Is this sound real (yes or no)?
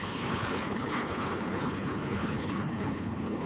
no